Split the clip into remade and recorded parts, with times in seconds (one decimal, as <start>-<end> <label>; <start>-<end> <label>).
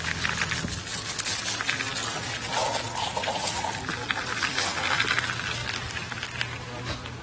0.0-7.2 recorded